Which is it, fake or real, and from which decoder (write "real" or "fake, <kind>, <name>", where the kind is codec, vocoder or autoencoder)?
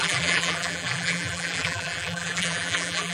fake, vocoder, BigVGAN v2